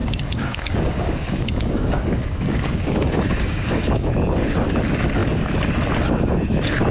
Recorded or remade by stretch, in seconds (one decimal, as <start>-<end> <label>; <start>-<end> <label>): 0.0-4.1 remade; 4.1-6.9 recorded